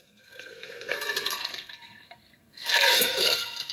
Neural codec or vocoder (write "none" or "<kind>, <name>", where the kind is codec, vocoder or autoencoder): codec, SNAC